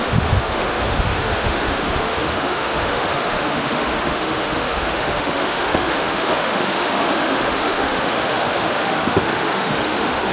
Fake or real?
fake